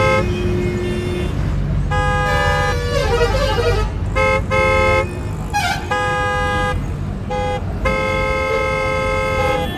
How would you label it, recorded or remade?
recorded